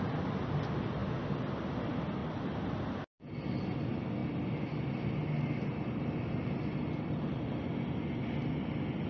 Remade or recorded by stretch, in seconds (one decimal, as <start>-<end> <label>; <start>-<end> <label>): 0.0-2.2 recorded; 2.2-2.8 remade; 2.8-4.2 recorded; 4.2-4.9 remade; 4.9-9.1 recorded